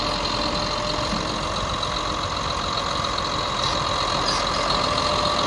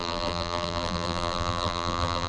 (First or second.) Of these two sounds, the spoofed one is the second